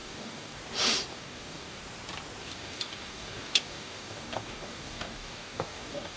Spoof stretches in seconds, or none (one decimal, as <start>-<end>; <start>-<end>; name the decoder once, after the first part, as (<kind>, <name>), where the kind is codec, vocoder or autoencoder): 0.0-0.6 (codec, DAC); 1.1-1.8; 2.4-6.2